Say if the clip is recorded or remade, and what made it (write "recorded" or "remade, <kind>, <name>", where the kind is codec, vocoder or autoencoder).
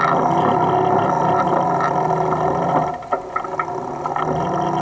recorded